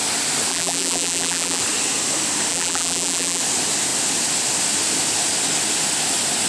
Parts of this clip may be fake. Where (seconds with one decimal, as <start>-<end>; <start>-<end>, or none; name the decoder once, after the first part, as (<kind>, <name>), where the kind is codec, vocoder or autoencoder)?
0.5-1.6 (vocoder, BigVGAN v2); 2.5-3.4